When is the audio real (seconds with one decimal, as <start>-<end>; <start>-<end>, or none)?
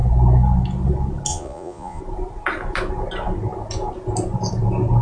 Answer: 0.0-1.3; 2.0-5.0